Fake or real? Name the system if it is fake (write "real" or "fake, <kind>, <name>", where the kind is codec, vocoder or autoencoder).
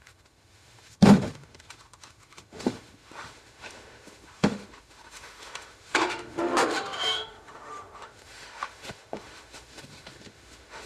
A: fake, autoencoder, DAC-VAE